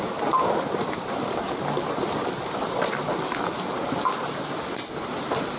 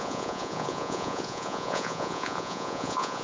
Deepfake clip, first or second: second